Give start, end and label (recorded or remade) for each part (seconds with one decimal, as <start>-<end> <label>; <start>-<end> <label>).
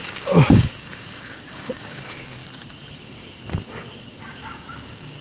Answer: 0.0-2.4 remade; 2.4-4.0 recorded; 4.0-5.2 remade